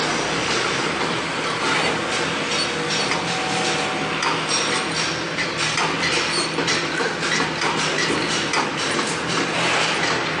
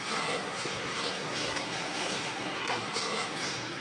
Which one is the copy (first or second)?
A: second